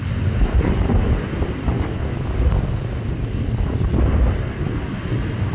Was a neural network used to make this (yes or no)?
no